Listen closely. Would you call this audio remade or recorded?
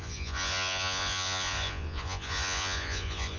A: remade